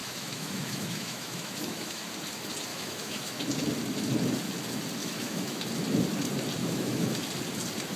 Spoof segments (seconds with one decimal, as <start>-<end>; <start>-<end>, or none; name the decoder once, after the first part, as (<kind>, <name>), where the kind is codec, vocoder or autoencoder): 0.0-2.1 (autoencoder, DAC-VAE); 2.7-3.4; 5.0-5.6; 6.6-7.2